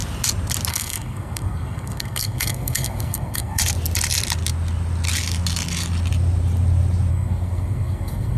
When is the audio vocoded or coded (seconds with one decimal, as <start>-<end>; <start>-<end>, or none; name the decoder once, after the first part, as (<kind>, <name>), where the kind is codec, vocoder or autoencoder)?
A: 0.7-3.6 (codec, SNAC); 7.1-8.4

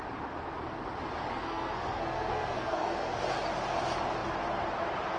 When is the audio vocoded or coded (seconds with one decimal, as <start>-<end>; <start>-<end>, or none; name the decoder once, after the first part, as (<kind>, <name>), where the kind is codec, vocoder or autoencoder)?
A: 1.3-3.2 (codec, SNAC)

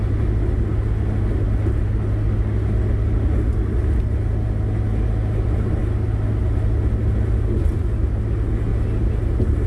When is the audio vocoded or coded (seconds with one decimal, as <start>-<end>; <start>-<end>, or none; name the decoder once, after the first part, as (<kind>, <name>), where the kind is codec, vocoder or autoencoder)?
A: none

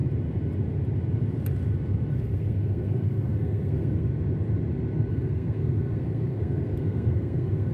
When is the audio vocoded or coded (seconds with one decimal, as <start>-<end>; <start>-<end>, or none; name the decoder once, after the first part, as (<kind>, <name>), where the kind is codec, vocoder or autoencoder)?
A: 2.1-4.1 (codec, SNAC); 5.1-7.7

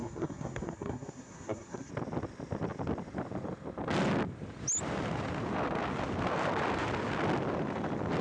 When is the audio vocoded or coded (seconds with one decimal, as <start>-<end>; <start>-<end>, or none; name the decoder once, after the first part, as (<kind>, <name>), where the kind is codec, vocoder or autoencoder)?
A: 0.0-1.9 (codec, SNAC)

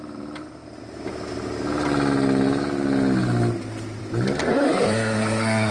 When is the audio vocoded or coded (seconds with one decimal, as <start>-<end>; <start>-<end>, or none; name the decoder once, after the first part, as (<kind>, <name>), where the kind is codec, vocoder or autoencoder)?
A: 4.5-5.7 (codec, SNAC)

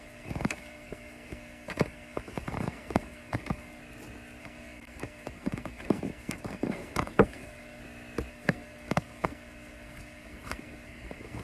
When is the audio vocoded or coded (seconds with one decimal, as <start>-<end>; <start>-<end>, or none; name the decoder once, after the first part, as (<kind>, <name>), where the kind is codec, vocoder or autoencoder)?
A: 0.0-3.8 (codec, SNAC); 4.4-7.8; 8.3-11.4